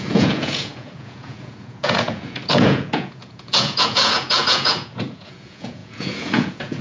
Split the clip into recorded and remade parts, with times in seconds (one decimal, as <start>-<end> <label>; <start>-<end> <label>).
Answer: 0.0-6.8 remade

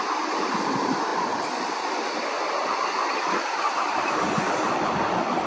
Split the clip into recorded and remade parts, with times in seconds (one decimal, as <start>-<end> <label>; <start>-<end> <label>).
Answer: 0.0-5.5 recorded

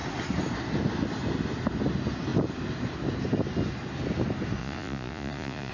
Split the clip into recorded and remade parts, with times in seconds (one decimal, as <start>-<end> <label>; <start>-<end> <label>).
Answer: 0.0-4.6 recorded; 4.6-5.7 remade

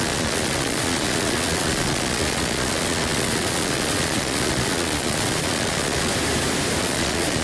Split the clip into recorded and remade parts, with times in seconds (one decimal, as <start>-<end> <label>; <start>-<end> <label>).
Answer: 0.0-6.1 remade; 6.1-6.8 recorded; 6.8-7.4 remade